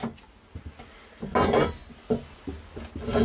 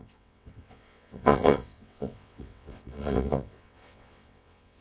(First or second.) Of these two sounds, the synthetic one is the second